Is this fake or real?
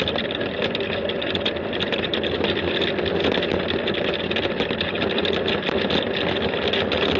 real